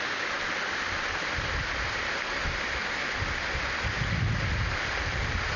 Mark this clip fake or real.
real